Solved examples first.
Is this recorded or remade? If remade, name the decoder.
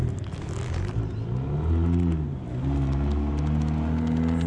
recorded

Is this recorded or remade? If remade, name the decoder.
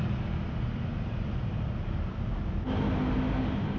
recorded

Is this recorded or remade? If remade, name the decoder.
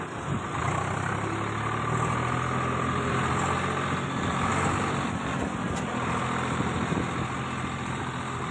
recorded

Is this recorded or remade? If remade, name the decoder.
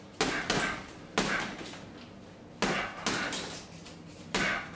recorded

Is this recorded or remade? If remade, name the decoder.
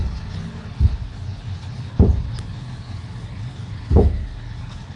remade, codec, HILCodec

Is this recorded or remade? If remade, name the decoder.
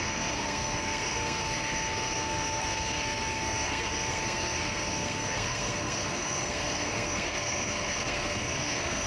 remade, codec, SNAC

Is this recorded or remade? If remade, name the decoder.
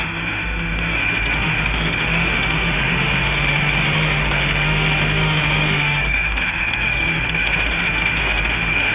remade, autoencoder, DAC-VAE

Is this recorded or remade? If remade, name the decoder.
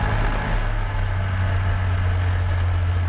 recorded